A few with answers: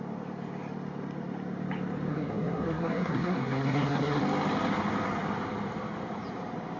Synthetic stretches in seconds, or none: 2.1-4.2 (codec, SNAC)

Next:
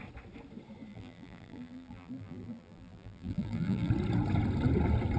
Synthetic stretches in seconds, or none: 0.9-3.9 (vocoder, BigVGAN v2)

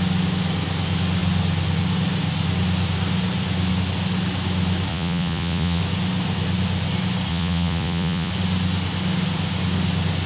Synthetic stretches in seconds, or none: 4.9-5.8 (vocoder, Vocos); 7.3-8.3

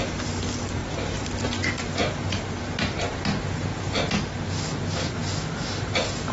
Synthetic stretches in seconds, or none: none

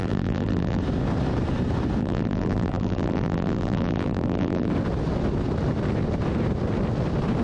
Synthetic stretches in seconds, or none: 0.0-0.8 (vocoder, BigVGAN v2); 2.0-4.7

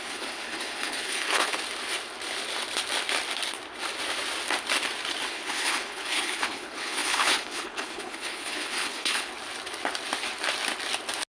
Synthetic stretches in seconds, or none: 0.0-1.5 (codec, HILCodec); 5.3-9.3